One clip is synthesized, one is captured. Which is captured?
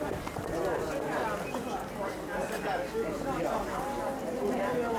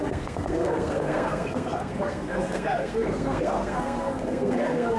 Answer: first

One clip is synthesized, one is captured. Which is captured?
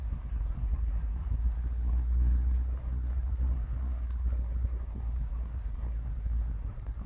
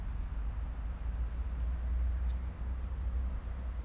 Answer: second